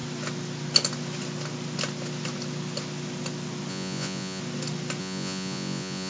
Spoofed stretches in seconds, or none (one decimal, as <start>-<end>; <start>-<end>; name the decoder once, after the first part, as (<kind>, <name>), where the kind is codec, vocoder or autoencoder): 3.7-4.4 (vocoder, Vocos); 5.0-6.1